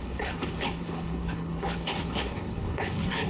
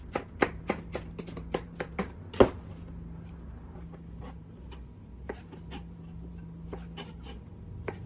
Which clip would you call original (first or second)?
second